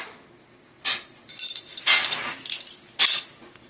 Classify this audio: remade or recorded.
recorded